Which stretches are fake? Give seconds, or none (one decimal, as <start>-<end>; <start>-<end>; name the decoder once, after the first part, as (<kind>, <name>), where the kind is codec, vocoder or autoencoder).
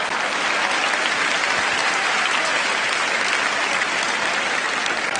1.8-3.3 (vocoder, BigVGAN v2)